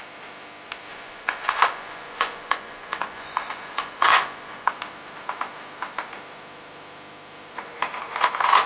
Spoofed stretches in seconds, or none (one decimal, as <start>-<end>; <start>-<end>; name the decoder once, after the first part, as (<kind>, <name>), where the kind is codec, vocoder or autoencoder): 0.9-4.7 (vocoder, Vocos)